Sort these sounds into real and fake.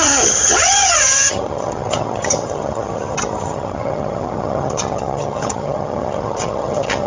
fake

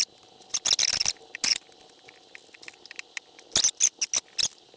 real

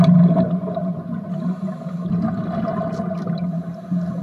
real